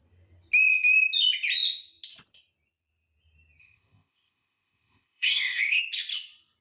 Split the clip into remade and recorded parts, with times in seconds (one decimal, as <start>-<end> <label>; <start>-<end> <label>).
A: 0.0-3.6 recorded; 3.6-5.8 remade; 5.8-6.6 recorded